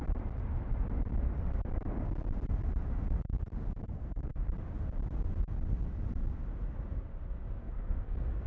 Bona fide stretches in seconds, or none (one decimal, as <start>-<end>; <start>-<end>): 0.0-3.8; 4.3-7.6